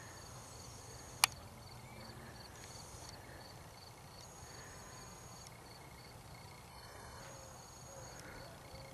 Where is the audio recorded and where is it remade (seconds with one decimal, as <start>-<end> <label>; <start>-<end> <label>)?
0.0-6.7 recorded; 6.7-7.2 remade; 7.2-8.9 recorded